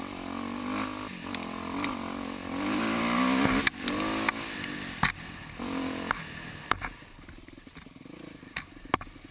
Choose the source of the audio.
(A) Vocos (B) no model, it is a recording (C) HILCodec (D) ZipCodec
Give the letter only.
B